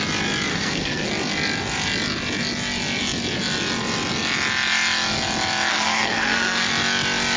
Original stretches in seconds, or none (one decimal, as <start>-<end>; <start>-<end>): 0.0-0.5; 1.1-5.7; 6.7-7.4